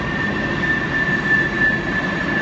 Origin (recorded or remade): recorded